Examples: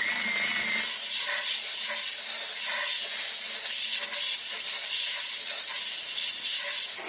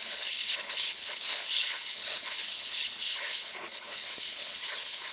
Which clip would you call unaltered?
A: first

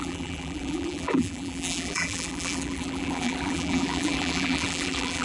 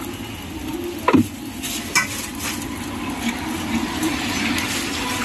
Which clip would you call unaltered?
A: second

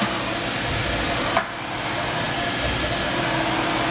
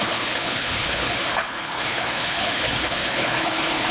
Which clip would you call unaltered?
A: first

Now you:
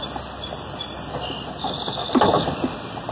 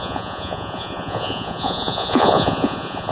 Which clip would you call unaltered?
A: first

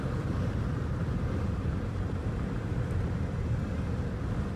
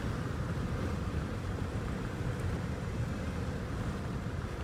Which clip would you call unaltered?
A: first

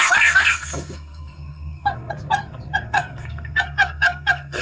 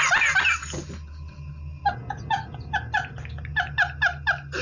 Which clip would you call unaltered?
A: second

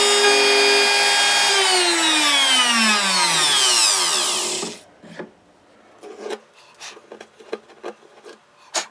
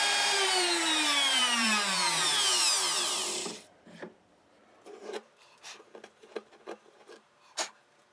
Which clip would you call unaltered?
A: first